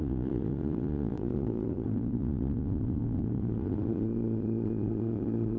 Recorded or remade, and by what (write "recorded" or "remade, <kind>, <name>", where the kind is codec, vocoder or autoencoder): remade, vocoder, Vocos